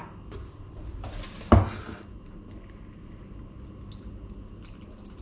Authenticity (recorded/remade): recorded